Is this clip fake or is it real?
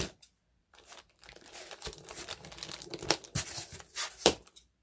fake